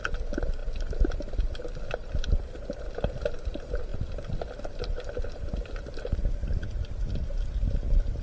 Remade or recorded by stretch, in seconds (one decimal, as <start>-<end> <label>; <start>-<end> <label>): 0.0-8.2 recorded